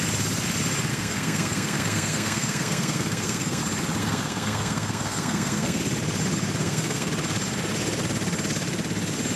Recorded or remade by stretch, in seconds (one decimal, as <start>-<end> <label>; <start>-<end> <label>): 0.0-0.9 recorded; 0.9-3.6 remade; 3.6-4.0 recorded; 4.0-5.8 remade; 5.8-6.6 recorded; 6.6-7.1 remade; 7.1-9.4 recorded